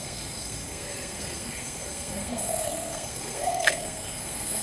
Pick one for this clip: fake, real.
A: fake